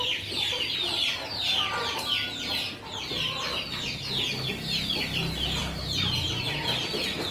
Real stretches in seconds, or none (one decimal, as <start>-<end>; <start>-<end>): 0.0-7.3